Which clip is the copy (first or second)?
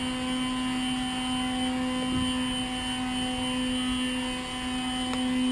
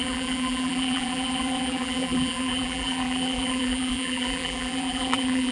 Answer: second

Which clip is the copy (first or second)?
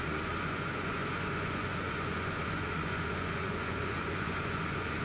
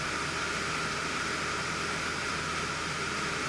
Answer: first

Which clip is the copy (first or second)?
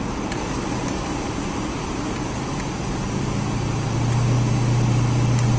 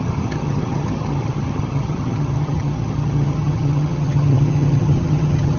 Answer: second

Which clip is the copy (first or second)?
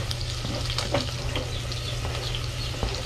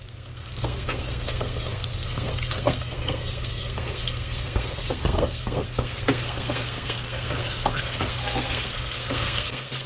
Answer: second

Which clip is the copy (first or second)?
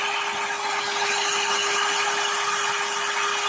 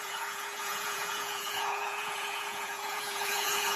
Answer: second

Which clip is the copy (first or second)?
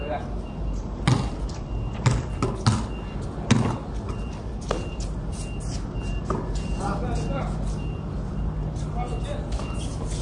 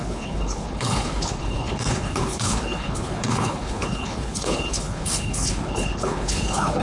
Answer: second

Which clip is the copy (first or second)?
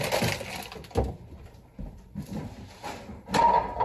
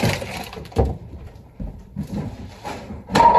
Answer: second